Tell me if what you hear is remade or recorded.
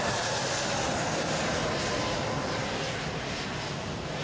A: recorded